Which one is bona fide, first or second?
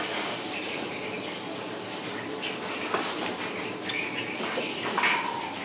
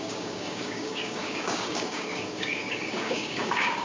first